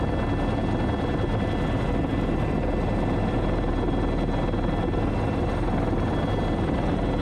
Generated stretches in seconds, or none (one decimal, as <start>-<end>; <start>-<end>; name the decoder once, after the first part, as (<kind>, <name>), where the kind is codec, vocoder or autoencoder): none